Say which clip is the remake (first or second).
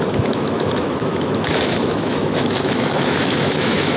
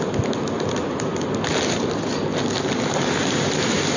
first